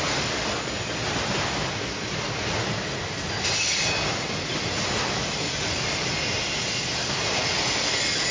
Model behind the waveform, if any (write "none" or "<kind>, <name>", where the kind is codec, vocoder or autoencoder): none